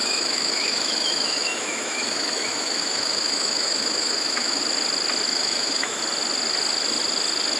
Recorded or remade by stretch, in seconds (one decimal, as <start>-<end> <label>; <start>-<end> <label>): 0.0-4.6 remade; 4.6-5.3 recorded; 5.3-6.0 remade; 6.0-7.6 recorded